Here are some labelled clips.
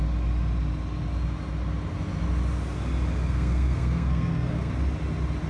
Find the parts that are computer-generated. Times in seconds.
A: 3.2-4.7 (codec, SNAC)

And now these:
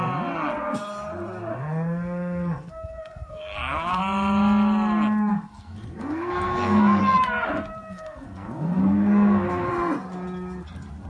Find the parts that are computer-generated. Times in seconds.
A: 1.5-4.0 (codec, SNAC); 5.3-7.0; 7.9-9.7

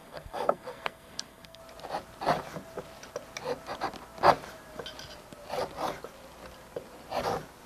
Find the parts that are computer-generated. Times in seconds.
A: 0.0-1.6 (codec, SNAC)

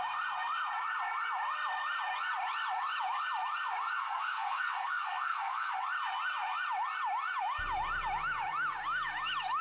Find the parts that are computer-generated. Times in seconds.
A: 4.0-5.7 (codec, SNAC)

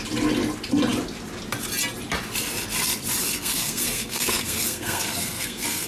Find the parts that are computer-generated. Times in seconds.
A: 3.2-5.9 (codec, SNAC)

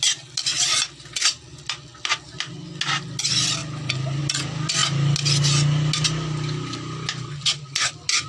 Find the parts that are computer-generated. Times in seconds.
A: none

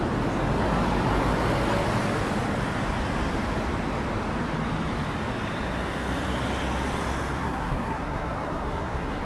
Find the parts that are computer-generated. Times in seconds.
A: 7.4-9.2 (codec, SNAC)